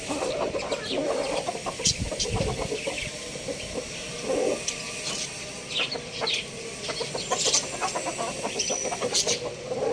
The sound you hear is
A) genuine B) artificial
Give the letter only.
A